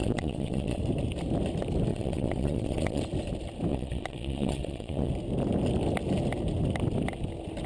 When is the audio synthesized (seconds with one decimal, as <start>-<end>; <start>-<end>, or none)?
0.0-0.8; 1.9-3.0; 3.7-5.1